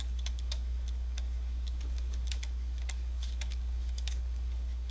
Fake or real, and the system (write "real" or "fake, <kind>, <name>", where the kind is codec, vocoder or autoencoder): fake, codec, DAC